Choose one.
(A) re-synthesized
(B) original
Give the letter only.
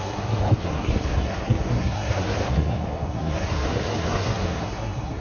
A